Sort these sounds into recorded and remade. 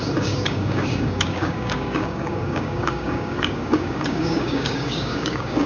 remade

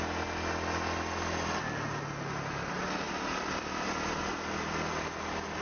recorded